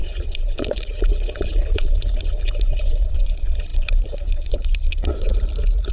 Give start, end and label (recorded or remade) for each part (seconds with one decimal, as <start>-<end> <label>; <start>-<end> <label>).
0.0-5.3 remade; 5.3-5.9 recorded